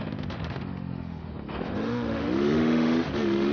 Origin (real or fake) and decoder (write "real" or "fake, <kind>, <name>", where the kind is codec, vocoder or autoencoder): fake, autoencoder, DAC-VAE